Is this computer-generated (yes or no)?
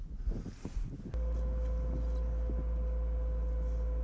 no